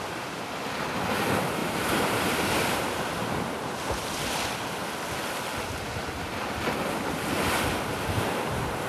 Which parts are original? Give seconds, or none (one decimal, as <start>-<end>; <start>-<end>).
0.0-1.6; 4.3-8.9